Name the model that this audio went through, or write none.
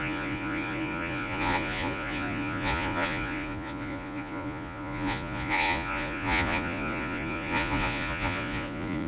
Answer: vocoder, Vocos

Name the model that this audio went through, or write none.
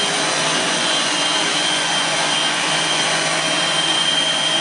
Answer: vocoder, Vocos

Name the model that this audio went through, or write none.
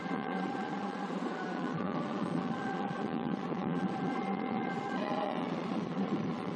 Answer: vocoder, Vocos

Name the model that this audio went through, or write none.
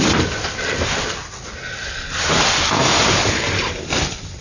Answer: none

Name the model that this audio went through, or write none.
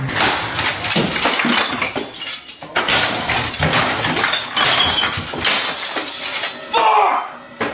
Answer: none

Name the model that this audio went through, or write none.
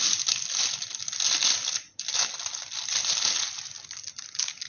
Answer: none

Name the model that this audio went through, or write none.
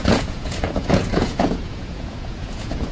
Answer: vocoder, Vocos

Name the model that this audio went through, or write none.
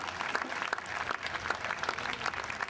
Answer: none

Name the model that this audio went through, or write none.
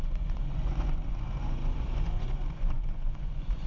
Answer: vocoder, Vocos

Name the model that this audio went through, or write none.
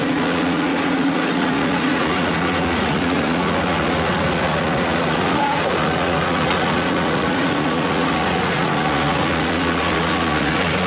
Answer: vocoder, Vocos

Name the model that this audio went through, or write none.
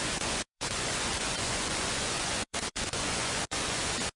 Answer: vocoder, Vocos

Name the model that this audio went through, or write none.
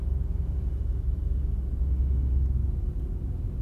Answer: none